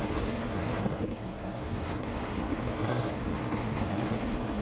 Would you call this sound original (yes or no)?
no